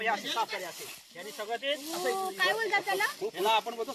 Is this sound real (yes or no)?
yes